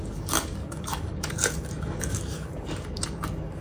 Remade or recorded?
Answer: remade